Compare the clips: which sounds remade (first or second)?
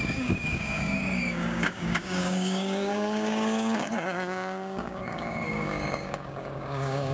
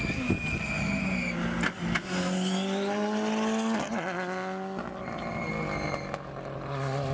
first